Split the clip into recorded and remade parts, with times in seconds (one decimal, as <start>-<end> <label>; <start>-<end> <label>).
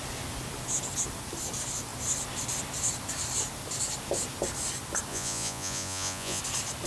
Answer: 0.0-5.1 recorded; 5.1-6.4 remade; 6.4-6.9 recorded